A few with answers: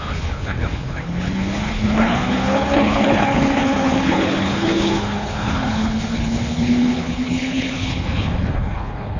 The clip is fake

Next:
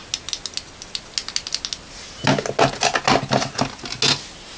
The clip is real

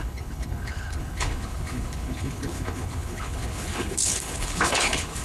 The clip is fake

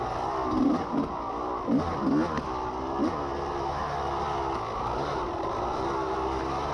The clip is real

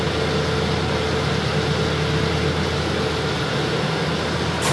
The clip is real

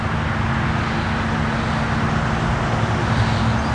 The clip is real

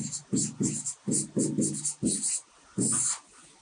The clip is real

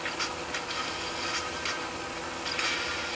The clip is real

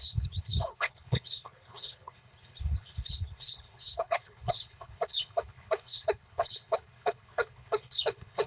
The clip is fake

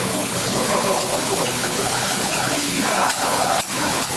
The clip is fake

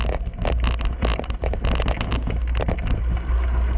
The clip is real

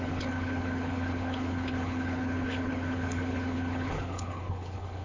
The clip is fake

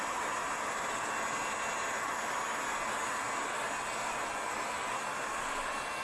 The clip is real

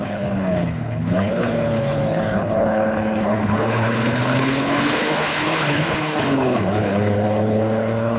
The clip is fake